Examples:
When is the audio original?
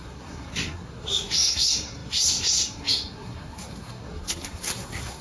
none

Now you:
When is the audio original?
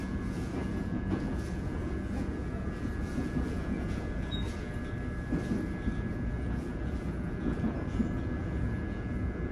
4.7-6.1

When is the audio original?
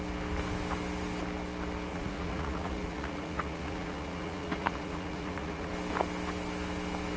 0.0-1.9; 5.7-7.2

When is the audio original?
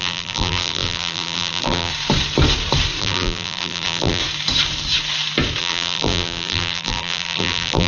1.9-3.0; 4.2-5.6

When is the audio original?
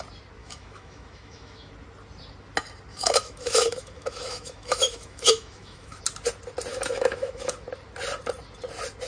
0.0-0.4; 1.7-2.9; 6.0-6.7; 7.5-9.1